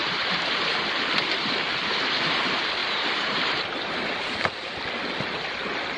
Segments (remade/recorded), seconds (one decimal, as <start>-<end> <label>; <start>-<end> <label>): 0.0-0.7 remade; 0.7-2.8 recorded; 2.8-4.8 remade; 4.8-6.0 recorded

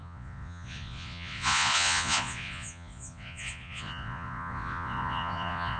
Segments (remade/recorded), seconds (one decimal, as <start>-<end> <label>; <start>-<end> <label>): 0.0-5.8 remade

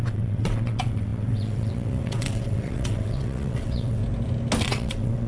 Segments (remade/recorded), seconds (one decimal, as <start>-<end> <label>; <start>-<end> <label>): 0.0-4.0 remade; 4.0-4.6 recorded; 4.6-5.3 remade

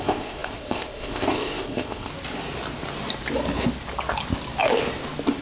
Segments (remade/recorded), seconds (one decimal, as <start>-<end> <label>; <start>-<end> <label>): 0.0-2.1 remade; 2.1-5.4 recorded

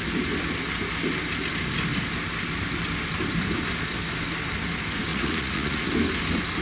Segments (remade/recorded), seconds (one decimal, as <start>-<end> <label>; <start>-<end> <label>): 0.0-5.1 recorded; 5.1-5.9 remade; 5.9-6.6 recorded

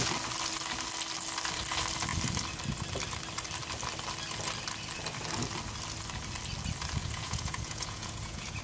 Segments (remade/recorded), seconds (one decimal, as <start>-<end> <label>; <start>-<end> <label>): 0.0-7.0 recorded; 7.0-8.6 remade

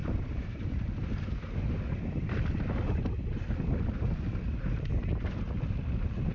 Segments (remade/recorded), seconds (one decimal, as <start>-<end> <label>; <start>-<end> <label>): 0.0-6.3 recorded